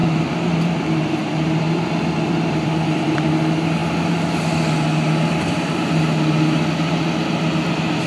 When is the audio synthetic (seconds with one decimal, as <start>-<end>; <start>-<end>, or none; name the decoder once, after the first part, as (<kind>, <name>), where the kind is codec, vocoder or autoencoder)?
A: 0.0-3.3 (vocoder, BigVGAN v2); 3.8-4.4